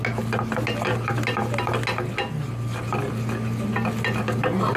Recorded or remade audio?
recorded